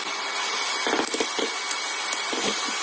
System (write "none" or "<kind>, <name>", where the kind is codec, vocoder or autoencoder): none